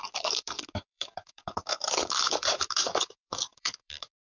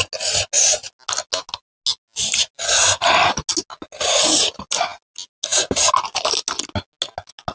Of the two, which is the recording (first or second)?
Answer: second